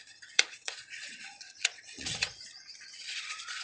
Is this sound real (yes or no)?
no